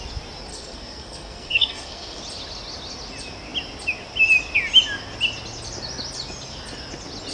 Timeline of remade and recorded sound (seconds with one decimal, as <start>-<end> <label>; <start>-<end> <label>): 0.0-0.5 recorded; 0.5-2.2 remade; 2.2-7.3 recorded